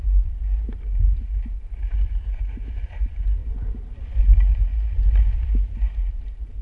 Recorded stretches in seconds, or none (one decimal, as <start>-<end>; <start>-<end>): 0.0-6.6